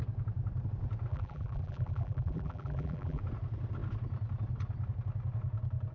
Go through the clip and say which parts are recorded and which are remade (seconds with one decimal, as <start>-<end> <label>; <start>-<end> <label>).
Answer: 0.0-1.1 recorded; 1.1-3.2 remade; 3.2-5.9 recorded